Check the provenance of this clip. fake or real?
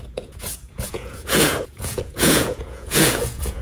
fake